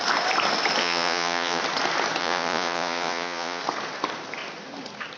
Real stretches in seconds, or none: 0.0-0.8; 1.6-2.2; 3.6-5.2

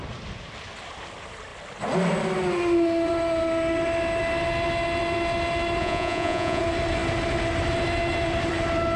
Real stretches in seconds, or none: 0.0-5.8; 6.6-9.0

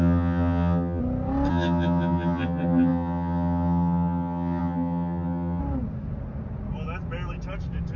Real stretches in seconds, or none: 1.0-1.5; 5.6-8.0

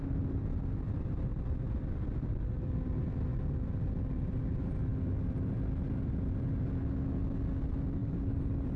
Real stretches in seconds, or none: 0.0-1.3; 2.6-8.0

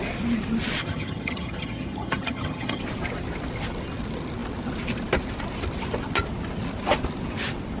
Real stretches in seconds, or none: 0.0-0.8; 2.8-7.8

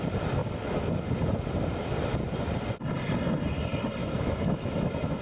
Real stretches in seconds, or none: 0.0-4.0

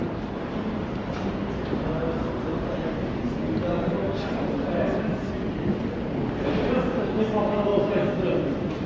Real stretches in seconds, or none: 0.0-8.9